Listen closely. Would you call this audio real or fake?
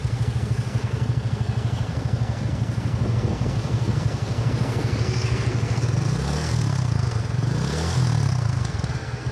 fake